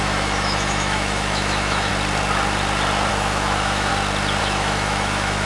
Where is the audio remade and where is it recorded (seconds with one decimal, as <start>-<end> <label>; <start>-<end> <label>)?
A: 0.0-1.9 remade; 1.9-3.1 recorded; 3.1-3.9 remade; 3.9-4.4 recorded; 4.4-5.5 remade